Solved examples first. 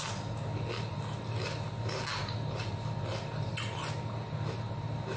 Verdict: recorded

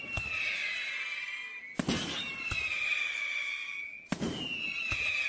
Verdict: recorded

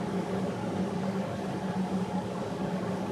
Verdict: remade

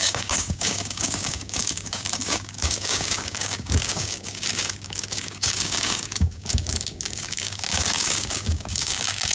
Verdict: remade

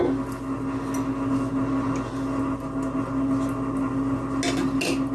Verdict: recorded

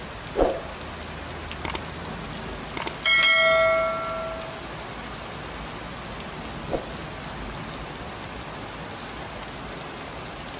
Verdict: recorded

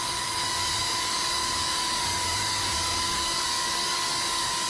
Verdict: remade